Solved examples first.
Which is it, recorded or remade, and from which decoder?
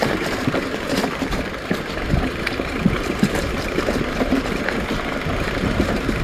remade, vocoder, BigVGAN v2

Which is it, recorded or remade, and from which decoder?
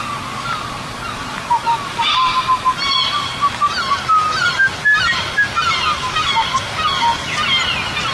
recorded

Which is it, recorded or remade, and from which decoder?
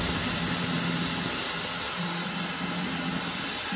recorded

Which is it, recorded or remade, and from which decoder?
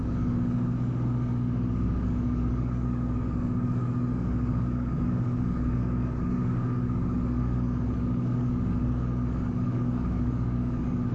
remade, codec, DAC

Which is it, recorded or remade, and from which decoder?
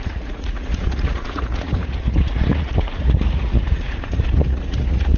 remade, vocoder, Vocos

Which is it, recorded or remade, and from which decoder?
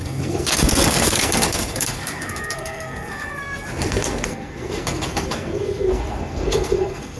remade, codec, SNAC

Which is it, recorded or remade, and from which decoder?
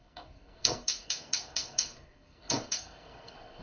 remade, codec, SNAC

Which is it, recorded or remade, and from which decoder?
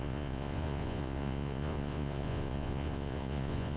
remade, vocoder, Vocos